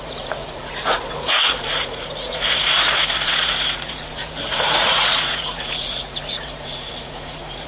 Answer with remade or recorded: remade